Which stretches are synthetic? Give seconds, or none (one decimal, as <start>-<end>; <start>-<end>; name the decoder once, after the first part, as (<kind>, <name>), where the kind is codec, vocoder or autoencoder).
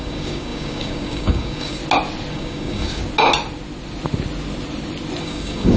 0.0-1.8 (codec, DAC); 2.3-3.0; 5.2-5.8